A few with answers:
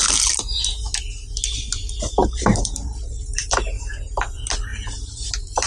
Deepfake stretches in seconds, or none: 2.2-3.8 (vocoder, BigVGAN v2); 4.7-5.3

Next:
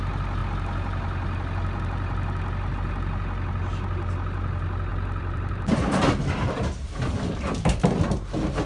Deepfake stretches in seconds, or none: 4.9-7.4 (vocoder, BigVGAN v2)

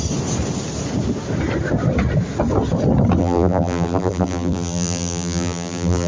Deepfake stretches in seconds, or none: 3.2-6.1 (vocoder, BigVGAN v2)